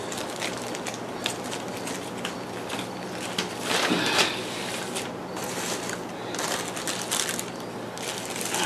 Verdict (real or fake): real